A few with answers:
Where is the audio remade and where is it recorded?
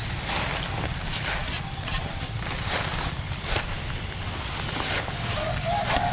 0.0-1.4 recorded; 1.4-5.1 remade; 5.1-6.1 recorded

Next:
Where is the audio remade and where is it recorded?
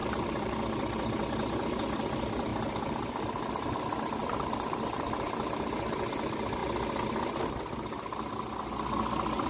0.0-0.5 remade; 0.5-2.5 recorded; 2.5-3.8 remade; 3.8-4.2 recorded; 4.2-5.7 remade; 5.7-9.5 recorded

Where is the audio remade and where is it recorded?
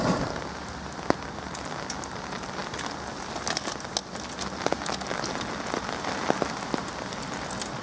0.0-7.8 recorded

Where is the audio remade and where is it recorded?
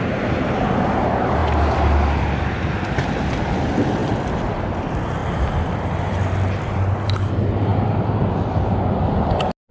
0.0-4.0 recorded; 4.0-4.6 remade; 4.6-5.2 recorded; 5.2-7.3 remade; 7.3-7.7 recorded; 7.7-8.4 remade; 8.4-9.7 recorded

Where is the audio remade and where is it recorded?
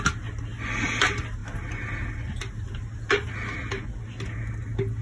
0.0-5.0 recorded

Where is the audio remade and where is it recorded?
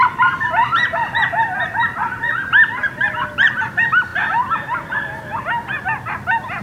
0.0-6.6 recorded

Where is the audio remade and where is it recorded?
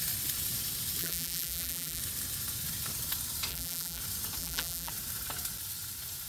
0.0-1.0 recorded; 1.0-2.0 remade; 2.0-3.5 recorded; 3.5-4.0 remade; 4.0-4.4 recorded; 4.4-4.9 remade; 4.9-6.3 recorded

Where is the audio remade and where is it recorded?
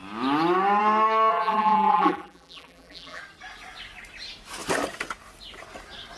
0.0-1.3 recorded; 1.3-3.2 remade; 3.2-6.2 recorded